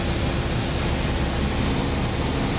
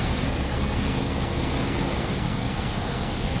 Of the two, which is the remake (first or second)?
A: second